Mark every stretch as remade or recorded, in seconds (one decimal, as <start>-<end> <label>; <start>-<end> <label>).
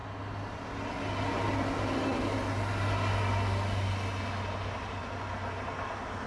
0.0-6.3 recorded